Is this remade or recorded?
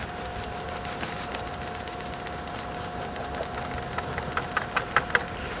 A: recorded